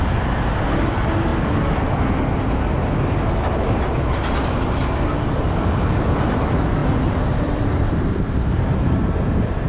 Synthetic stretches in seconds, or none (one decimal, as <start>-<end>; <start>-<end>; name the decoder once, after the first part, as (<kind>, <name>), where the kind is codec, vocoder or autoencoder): 0.0-1.3 (vocoder, BigVGAN v2); 3.6-4.8; 5.4-9.7